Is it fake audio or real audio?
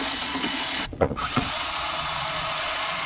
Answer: fake